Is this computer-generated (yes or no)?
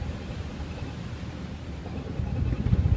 no